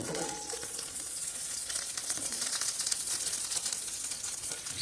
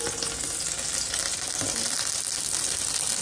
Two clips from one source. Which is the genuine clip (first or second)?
second